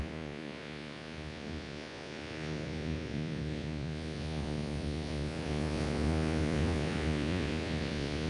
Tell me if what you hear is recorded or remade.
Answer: remade